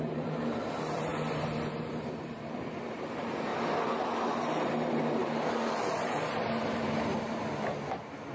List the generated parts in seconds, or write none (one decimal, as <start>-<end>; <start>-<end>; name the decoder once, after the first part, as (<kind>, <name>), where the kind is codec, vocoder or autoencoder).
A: 0.0-1.1 (vocoder, BigVGAN v2); 1.8-3.5; 4.6-5.2; 5.7-7.1